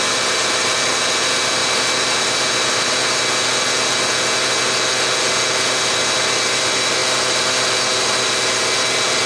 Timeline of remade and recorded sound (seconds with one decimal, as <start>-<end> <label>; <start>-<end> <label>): 0.0-9.3 recorded